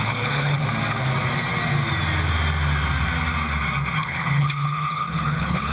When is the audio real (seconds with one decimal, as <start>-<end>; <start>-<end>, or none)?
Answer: 0.6-4.0